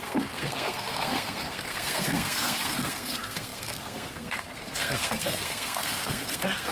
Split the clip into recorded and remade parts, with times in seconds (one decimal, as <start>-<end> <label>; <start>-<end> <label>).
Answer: 0.0-6.7 remade